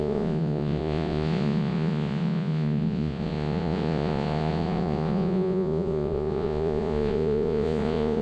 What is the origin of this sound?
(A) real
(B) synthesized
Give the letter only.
B